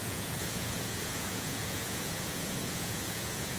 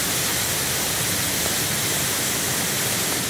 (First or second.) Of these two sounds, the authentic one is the second